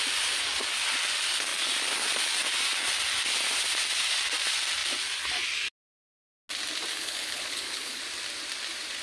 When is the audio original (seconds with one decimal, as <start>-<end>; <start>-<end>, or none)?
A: 0.0-6.9; 8.0-9.0